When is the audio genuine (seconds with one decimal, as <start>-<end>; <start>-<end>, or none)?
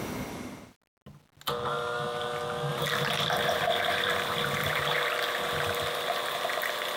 0.0-2.7; 5.1-7.0